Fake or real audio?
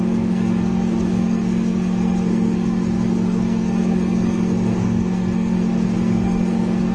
fake